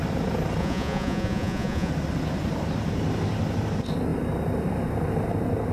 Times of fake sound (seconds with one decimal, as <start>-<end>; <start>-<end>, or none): 0.6-1.9